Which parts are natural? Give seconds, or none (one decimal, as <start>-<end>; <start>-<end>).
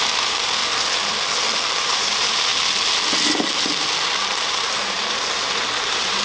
0.6-1.8; 2.5-4.5